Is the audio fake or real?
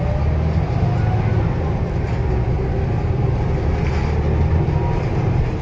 real